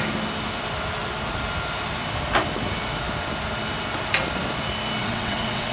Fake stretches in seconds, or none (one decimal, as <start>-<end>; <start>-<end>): 5.0-5.7